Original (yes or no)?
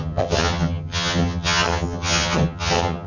no